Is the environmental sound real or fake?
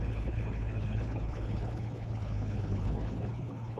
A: fake